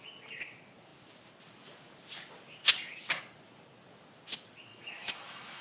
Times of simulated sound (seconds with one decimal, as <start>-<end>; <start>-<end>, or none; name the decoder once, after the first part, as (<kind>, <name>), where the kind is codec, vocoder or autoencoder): 4.7-5.6 (autoencoder, DAC-VAE)

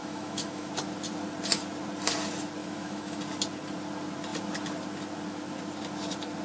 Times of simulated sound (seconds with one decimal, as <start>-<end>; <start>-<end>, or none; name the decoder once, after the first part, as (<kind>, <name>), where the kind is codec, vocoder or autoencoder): 0.0-0.7 (autoencoder, DAC-VAE); 2.6-3.2

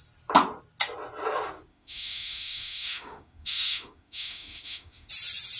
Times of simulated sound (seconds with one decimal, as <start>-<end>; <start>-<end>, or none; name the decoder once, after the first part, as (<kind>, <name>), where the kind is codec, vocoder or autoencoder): 1.7-5.1 (autoencoder, DAC-VAE)